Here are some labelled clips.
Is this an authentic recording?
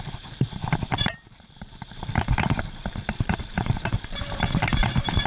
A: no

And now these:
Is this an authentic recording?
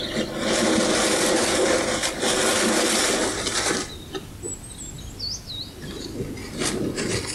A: yes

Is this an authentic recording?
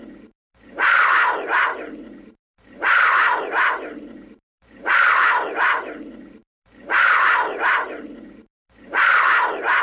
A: no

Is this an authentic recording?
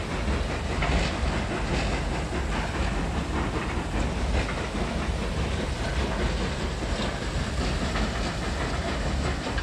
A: yes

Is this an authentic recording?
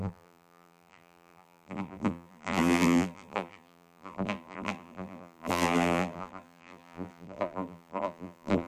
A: no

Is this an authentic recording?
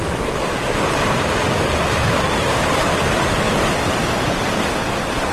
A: no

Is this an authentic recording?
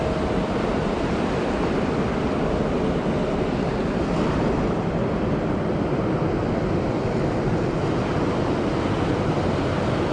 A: yes